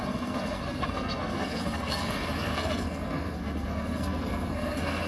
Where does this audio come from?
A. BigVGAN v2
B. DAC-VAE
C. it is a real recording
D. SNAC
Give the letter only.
D